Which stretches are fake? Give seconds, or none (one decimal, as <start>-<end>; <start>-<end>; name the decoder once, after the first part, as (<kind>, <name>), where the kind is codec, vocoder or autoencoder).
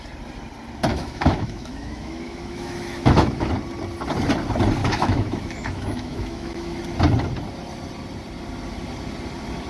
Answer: 0.9-3.5 (autoencoder, DAC-VAE); 4.8-6.8